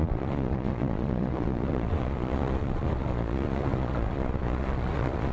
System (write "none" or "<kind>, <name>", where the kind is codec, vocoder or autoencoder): vocoder, Vocos